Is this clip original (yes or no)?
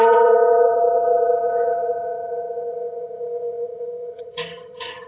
no